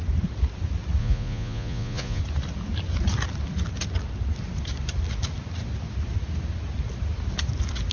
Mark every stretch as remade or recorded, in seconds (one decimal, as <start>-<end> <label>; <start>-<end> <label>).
0.0-1.0 recorded; 1.0-2.2 remade; 2.2-7.9 recorded